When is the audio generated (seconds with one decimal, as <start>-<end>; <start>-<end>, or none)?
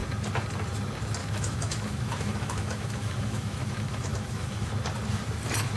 1.2-4.7